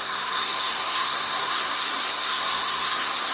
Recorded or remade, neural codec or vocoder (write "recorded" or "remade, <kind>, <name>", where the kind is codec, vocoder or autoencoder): remade, codec, SNAC